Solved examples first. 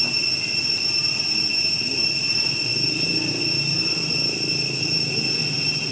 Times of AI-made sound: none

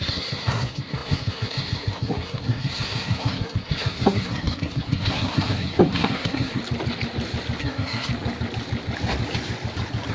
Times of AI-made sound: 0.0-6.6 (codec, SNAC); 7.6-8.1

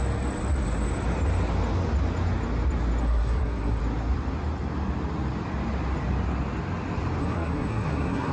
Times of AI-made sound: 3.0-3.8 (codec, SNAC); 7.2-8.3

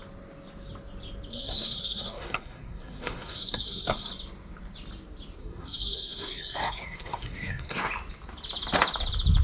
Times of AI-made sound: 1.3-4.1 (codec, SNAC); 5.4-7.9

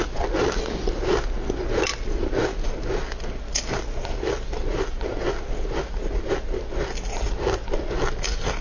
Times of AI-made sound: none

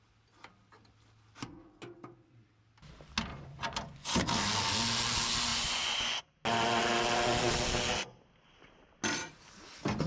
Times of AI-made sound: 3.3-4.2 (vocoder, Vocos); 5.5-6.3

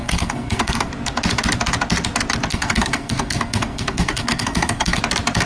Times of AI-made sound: 0.0-0.9 (codec, SNAC); 2.5-5.0